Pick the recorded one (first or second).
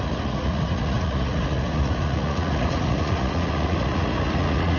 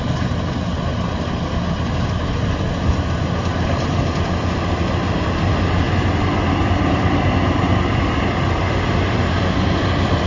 second